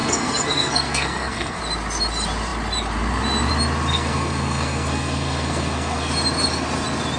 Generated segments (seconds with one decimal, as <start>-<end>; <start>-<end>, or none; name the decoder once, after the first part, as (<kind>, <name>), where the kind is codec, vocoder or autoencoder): 0.0-1.6 (codec, SNAC); 3.9-6.1